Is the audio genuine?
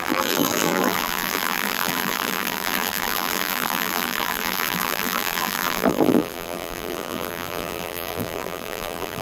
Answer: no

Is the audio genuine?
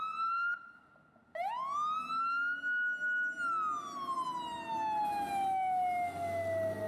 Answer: yes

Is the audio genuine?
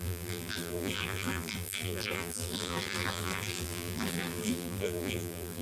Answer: no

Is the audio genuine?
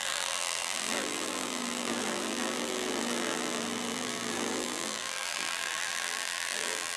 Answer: no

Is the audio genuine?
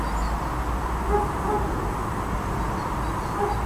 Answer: yes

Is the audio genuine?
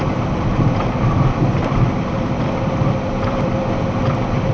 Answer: no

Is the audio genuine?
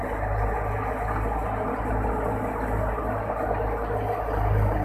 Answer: yes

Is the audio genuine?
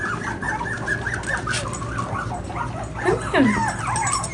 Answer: yes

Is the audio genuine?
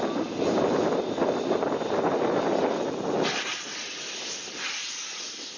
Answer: yes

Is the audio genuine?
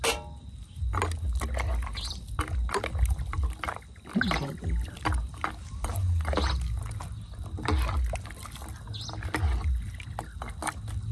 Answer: yes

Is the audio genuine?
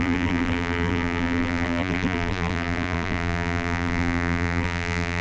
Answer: no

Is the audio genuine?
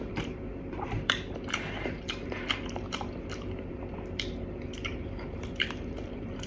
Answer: no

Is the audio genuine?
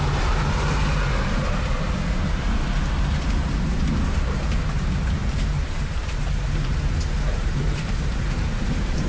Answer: no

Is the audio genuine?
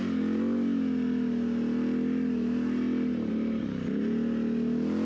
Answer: yes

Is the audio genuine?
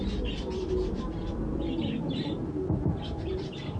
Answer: no